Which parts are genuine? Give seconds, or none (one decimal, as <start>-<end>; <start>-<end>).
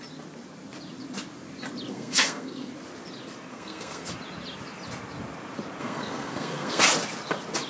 0.0-1.9; 2.7-3.5; 4.1-5.8; 6.8-7.7